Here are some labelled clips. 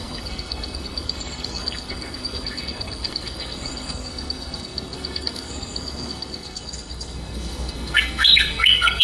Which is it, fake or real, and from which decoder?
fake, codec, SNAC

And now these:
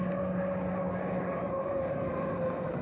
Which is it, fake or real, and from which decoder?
real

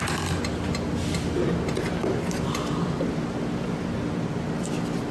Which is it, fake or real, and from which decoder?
real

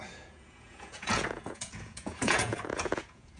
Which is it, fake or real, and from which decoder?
fake, vocoder, Vocos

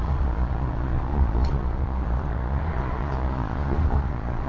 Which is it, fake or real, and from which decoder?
fake, vocoder, Vocos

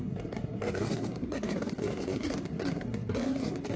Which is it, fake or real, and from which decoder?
fake, codec, SNAC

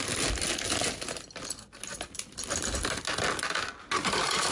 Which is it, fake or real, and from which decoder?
real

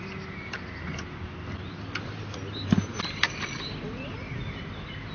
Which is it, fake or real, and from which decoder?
real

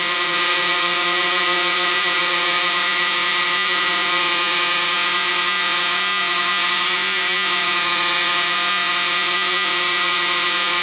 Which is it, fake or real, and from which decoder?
fake, vocoder, Vocos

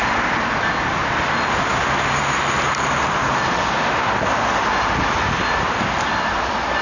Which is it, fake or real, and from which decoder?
real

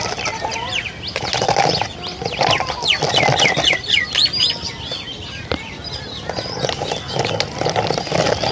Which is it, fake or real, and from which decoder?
real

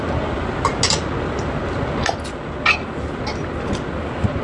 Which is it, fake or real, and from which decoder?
real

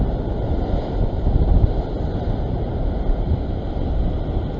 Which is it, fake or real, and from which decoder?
real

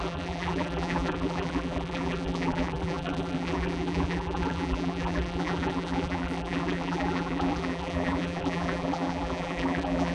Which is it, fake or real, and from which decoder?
fake, vocoder, BigVGAN v2